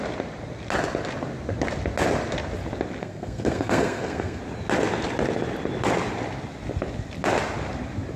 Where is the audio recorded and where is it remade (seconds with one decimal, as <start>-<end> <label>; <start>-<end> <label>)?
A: 0.0-3.0 recorded; 3.0-4.4 remade; 4.4-8.2 recorded